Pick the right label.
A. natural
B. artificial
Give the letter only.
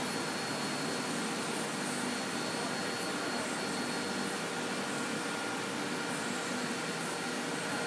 A